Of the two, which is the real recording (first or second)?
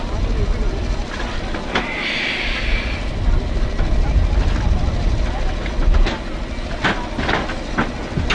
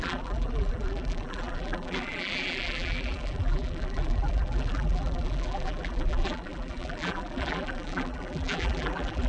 first